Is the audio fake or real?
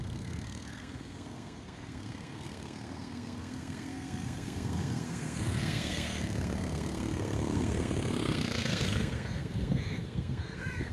fake